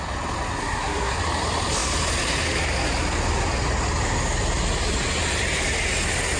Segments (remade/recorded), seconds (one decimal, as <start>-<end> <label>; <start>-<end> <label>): 0.0-0.6 recorded; 0.6-1.2 remade; 1.2-6.4 recorded